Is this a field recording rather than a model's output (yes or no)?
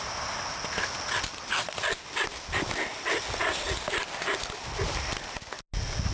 yes